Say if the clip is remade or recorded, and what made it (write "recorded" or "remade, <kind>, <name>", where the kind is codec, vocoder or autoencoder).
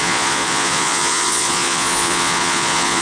remade, vocoder, Vocos